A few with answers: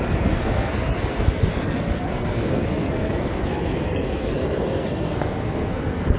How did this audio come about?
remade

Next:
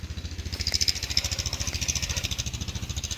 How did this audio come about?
recorded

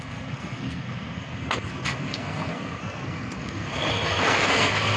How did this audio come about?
remade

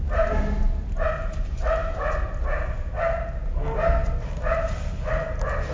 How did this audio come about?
recorded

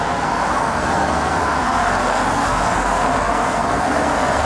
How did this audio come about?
remade